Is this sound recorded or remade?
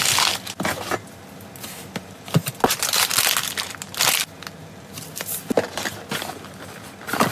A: recorded